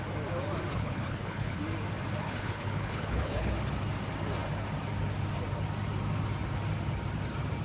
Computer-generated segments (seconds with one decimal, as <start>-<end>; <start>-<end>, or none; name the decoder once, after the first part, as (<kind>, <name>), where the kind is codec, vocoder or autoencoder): 0.7-1.6 (codec, HILCodec); 2.2-3.5